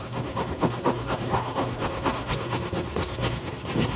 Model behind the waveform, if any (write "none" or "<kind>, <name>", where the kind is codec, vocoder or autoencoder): codec, SNAC